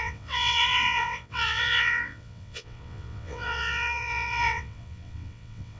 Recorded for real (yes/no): no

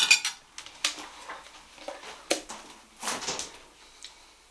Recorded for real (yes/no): yes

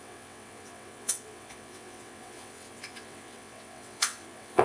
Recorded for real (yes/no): no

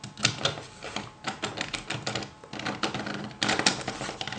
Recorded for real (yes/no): yes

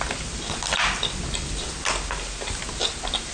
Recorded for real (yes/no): yes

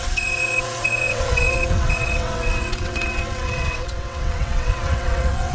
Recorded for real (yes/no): no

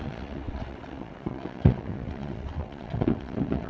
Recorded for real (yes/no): no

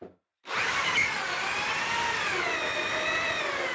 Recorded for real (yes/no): yes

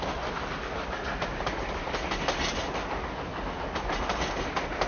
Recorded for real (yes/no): yes